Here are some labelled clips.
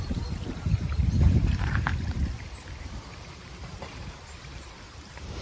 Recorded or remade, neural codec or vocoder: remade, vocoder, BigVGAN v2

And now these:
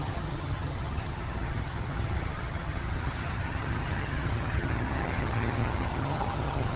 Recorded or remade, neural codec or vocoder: remade, vocoder, HiFi-GAN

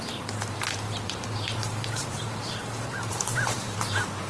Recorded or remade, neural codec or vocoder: remade, vocoder, BigVGAN v2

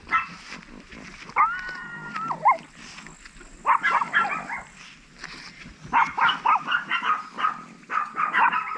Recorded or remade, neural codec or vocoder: recorded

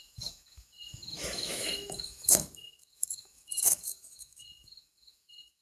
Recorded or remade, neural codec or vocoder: remade, autoencoder, DAC-VAE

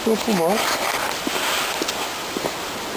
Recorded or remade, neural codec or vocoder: recorded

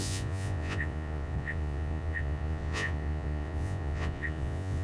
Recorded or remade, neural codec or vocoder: remade, vocoder, Vocos